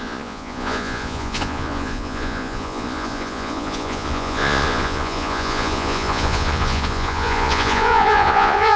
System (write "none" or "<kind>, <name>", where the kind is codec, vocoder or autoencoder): vocoder, Vocos